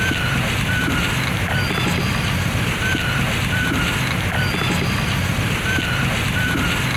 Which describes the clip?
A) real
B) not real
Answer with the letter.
A